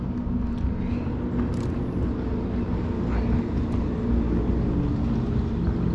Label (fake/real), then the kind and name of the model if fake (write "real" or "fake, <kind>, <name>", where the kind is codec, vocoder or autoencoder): real